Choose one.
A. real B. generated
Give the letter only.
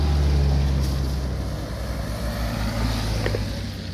A